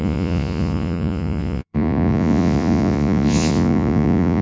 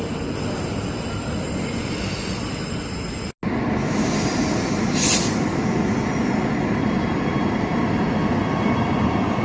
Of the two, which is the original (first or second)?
second